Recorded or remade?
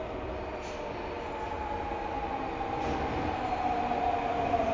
recorded